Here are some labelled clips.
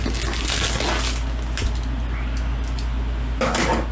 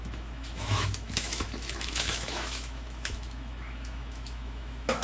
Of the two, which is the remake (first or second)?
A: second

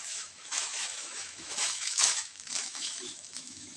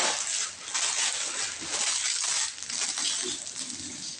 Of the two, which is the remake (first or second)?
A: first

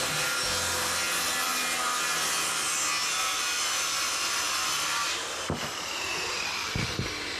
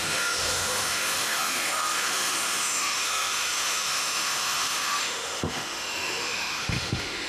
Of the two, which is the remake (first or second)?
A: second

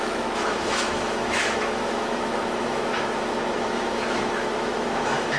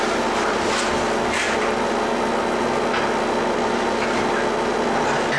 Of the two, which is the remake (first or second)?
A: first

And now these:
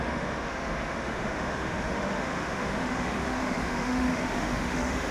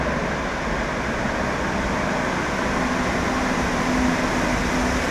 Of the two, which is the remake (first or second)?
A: first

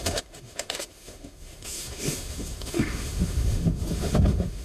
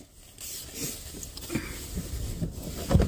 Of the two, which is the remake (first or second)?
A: first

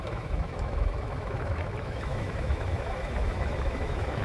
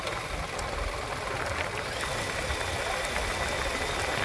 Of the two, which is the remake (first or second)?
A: first